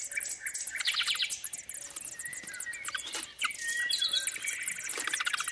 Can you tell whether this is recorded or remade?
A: recorded